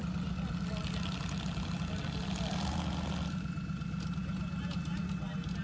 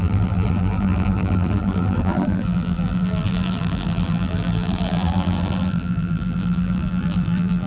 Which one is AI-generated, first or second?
second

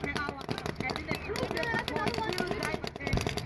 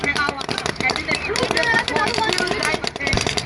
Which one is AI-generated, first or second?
second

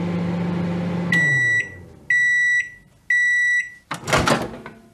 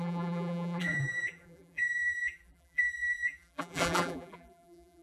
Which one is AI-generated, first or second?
second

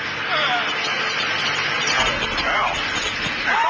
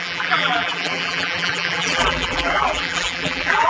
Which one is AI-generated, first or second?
second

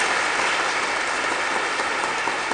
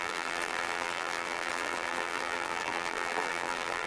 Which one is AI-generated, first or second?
second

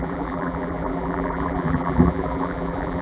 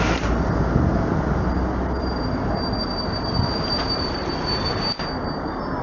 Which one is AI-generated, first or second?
first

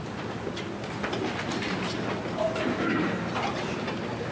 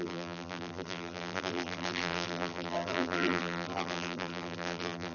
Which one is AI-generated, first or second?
second